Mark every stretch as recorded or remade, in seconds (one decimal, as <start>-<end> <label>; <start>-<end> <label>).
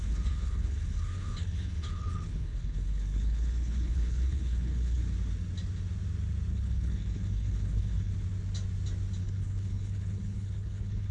0.0-5.0 remade; 5.0-6.5 recorded; 6.5-8.1 remade; 8.1-9.2 recorded; 9.2-11.1 remade